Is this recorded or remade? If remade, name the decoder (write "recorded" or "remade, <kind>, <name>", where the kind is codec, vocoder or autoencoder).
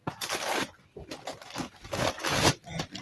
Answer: recorded